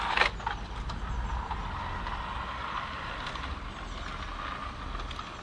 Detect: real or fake real